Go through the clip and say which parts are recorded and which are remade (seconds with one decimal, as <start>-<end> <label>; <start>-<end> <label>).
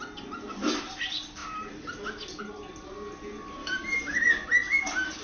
0.0-3.6 recorded; 3.6-4.3 remade; 4.3-5.2 recorded